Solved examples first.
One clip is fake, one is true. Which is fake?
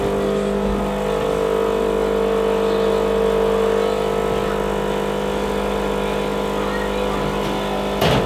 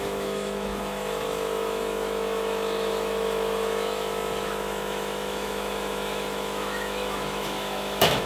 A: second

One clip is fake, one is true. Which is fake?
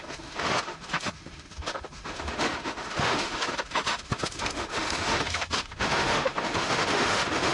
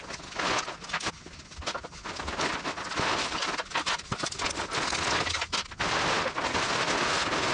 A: first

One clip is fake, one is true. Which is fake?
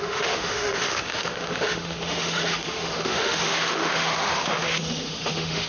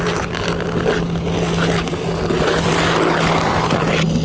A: first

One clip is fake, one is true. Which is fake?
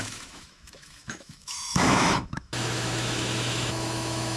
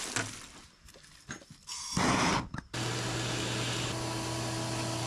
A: first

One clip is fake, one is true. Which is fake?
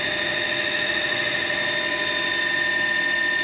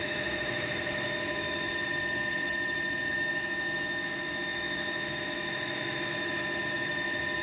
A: second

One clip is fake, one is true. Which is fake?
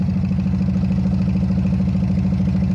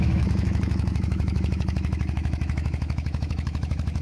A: second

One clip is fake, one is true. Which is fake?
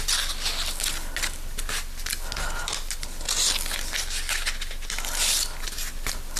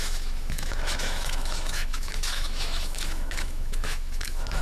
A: second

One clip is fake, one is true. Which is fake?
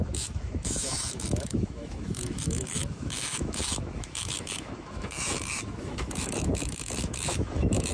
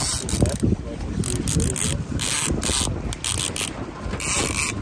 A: first